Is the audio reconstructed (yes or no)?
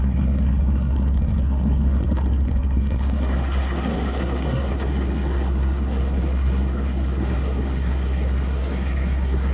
yes